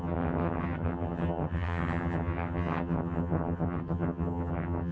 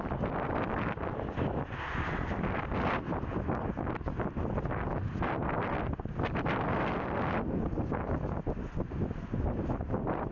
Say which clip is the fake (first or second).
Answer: first